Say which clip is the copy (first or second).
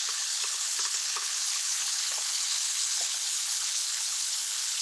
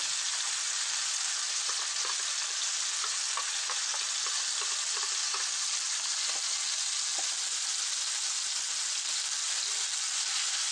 first